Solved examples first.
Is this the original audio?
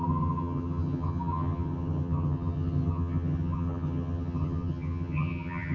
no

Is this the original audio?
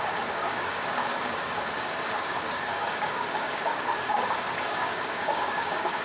no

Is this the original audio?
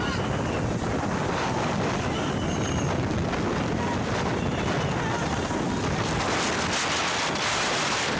yes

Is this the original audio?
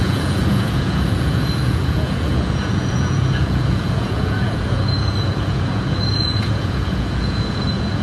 no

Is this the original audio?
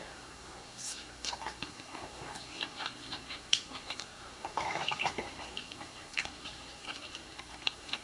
no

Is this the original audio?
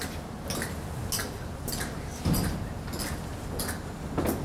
yes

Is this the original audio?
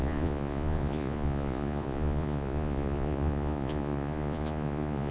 no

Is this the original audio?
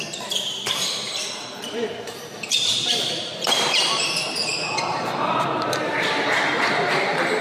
no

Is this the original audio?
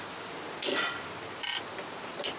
yes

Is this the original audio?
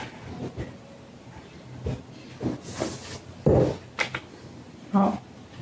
yes